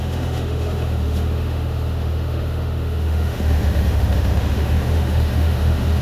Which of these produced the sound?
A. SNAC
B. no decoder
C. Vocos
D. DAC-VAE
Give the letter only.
D